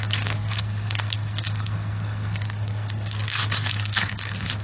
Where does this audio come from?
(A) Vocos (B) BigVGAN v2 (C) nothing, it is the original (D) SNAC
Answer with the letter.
D